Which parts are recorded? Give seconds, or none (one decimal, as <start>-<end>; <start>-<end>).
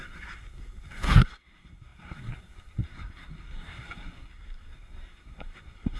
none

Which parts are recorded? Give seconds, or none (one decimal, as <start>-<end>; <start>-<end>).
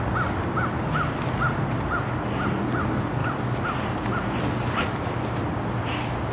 0.0-6.3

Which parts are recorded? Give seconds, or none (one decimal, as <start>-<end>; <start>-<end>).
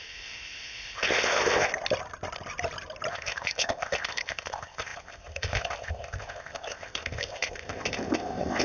1.7-3.1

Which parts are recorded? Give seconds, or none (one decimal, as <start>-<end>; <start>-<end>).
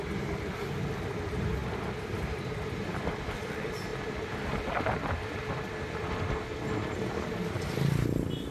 0.0-8.5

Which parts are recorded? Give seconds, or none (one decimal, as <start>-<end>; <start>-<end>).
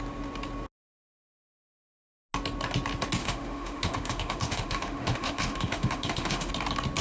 0.0-3.2; 6.5-7.0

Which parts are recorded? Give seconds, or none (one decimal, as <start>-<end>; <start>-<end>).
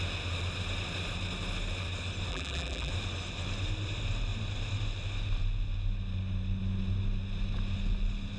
0.0-2.3; 2.9-8.4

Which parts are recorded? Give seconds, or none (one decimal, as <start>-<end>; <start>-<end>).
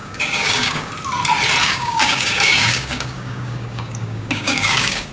0.9-1.6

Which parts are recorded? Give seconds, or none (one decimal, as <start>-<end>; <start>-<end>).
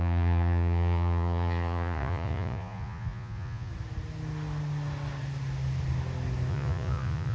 3.7-6.5